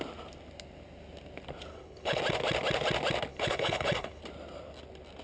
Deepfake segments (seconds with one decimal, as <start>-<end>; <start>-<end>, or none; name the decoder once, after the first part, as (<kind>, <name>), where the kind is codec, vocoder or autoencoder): 1.7-2.2 (codec, HILCodec); 3.3-4.2